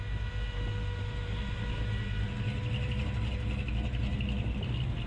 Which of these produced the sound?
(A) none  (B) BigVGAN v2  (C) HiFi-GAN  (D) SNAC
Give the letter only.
A